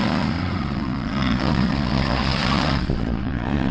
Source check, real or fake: fake